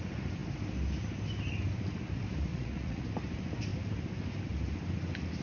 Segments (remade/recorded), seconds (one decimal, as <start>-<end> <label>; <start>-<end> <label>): 0.0-2.5 recorded; 2.5-3.1 remade; 3.1-5.4 recorded